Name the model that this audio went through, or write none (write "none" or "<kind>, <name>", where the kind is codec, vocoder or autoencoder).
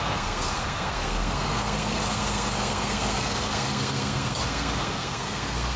codec, SNAC